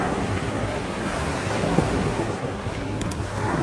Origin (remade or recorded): remade